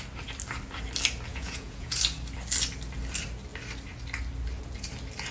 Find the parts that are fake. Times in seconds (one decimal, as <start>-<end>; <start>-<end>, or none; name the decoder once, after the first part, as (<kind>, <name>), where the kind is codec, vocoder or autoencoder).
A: 1.3-2.0 (vocoder, Vocos)